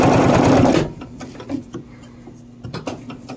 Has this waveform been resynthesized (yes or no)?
no